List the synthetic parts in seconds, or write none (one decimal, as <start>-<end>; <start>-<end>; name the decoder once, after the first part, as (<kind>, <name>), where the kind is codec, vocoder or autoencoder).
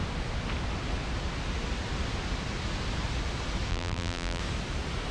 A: 3.7-4.4 (vocoder, BigVGAN v2)